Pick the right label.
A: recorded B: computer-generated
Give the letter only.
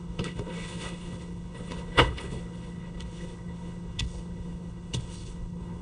B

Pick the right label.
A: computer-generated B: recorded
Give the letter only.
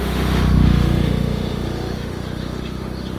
A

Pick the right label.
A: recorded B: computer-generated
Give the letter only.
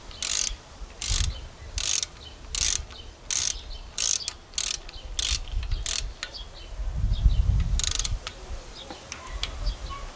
A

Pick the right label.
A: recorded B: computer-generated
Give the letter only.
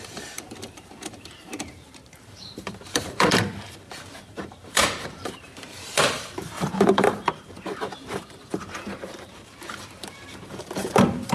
B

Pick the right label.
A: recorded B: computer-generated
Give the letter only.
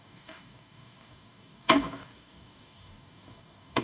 B